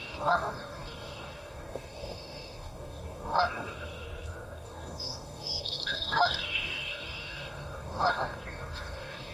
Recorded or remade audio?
remade